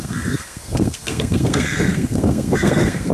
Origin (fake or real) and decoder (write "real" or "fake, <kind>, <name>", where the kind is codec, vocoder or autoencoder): fake, codec, SNAC